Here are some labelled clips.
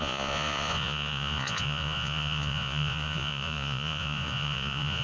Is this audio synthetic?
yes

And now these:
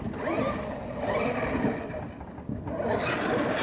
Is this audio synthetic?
no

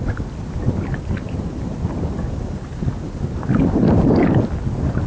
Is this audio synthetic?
no